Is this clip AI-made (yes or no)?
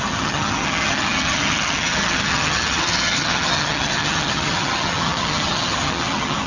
yes